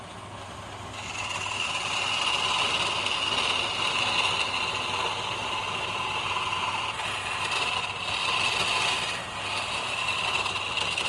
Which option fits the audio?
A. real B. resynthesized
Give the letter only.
A